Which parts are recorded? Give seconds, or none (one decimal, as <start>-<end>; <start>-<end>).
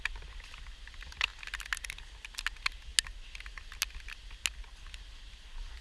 0.0-5.8